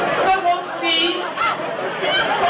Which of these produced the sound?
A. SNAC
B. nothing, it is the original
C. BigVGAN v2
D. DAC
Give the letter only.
B